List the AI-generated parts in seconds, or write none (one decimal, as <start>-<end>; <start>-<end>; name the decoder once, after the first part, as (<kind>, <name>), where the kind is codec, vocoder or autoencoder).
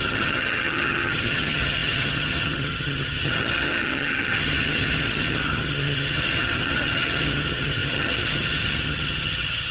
0.0-9.7 (vocoder, HiFi-GAN)